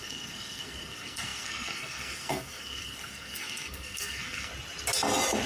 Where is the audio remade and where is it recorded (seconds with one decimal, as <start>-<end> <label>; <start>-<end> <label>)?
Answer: 0.0-4.5 remade; 4.5-5.5 recorded